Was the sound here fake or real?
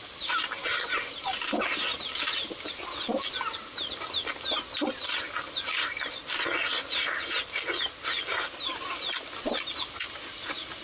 real